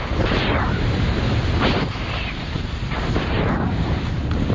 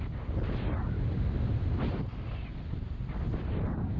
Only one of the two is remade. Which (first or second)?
first